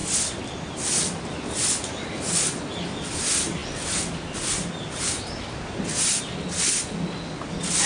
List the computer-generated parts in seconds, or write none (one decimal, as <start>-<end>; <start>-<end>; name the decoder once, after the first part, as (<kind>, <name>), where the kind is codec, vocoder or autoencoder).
none